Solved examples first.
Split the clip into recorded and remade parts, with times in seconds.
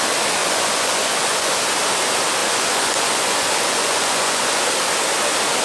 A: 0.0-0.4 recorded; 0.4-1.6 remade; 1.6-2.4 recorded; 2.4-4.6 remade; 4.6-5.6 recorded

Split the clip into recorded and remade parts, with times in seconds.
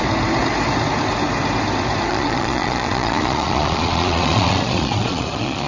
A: 0.0-2.1 recorded; 2.1-5.7 remade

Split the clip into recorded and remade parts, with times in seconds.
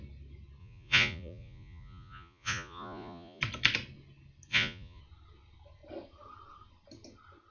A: 0.0-0.6 recorded; 0.6-3.4 remade; 3.4-4.5 recorded; 4.5-5.0 remade; 5.0-7.5 recorded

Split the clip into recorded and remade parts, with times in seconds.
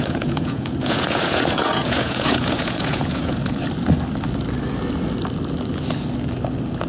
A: 0.0-3.4 remade; 3.4-6.9 recorded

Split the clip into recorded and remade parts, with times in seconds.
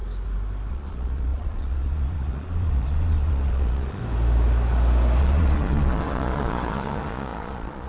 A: 0.0-0.7 recorded; 0.7-4.0 remade; 4.0-5.2 recorded; 5.2-7.9 remade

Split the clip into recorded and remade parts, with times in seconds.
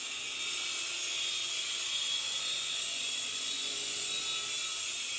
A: 0.0-1.1 recorded; 1.1-4.2 remade; 4.2-5.2 recorded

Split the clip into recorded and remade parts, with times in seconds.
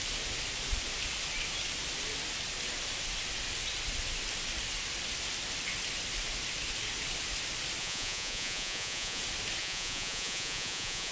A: 0.0-7.8 recorded; 7.8-9.2 remade; 9.2-9.6 recorded; 9.6-11.1 remade